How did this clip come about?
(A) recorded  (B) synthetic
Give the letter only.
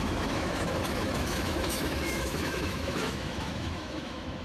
B